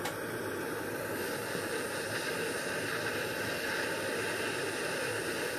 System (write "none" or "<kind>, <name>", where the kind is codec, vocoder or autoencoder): none